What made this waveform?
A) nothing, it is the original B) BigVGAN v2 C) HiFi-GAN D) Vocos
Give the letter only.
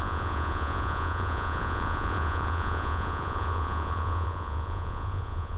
D